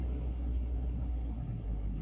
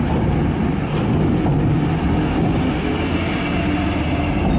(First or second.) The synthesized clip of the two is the first